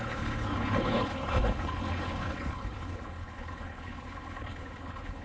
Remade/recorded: remade